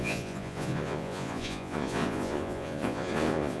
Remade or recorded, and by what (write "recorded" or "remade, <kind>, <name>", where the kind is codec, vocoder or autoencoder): remade, vocoder, Vocos